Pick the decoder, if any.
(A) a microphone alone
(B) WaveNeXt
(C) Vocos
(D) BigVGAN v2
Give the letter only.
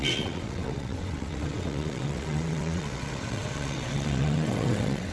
B